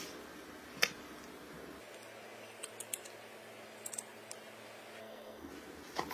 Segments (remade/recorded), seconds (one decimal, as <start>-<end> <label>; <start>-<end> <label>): 0.0-5.0 recorded; 5.0-5.5 remade; 5.5-6.1 recorded